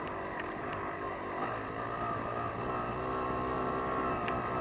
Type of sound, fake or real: real